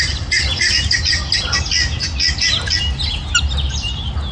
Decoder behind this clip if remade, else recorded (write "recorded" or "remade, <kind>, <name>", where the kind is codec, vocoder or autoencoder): recorded